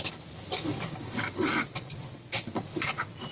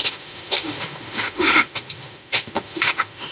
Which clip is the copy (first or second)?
second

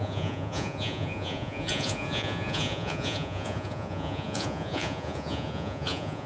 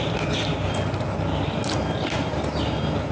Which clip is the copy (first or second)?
first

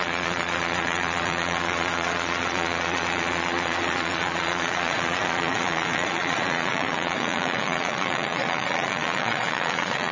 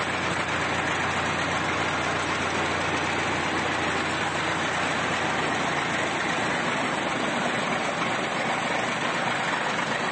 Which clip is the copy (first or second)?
first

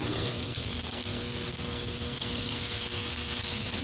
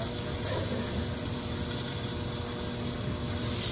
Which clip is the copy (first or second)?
first